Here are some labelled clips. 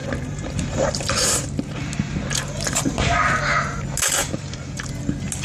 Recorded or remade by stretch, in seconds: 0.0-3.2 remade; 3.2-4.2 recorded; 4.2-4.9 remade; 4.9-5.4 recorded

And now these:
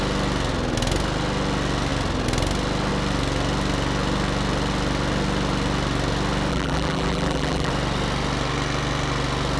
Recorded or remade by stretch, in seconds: 0.0-6.5 recorded; 6.5-7.7 remade; 7.7-9.6 recorded

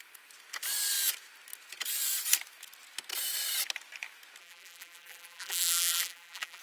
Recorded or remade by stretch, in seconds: 0.0-4.4 recorded; 4.4-6.6 remade